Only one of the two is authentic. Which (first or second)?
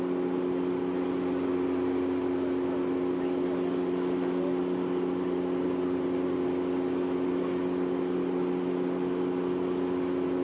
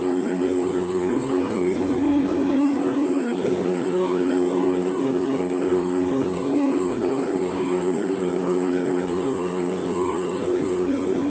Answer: first